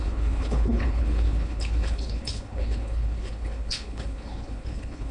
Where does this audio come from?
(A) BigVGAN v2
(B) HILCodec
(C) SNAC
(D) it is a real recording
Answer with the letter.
B